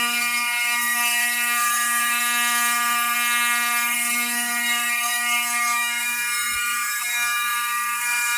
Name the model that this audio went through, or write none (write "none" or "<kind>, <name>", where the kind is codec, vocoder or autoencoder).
codec, SNAC